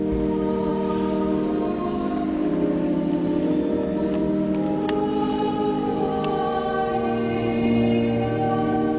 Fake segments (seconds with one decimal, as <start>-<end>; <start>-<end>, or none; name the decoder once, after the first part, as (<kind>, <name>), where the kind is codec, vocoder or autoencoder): none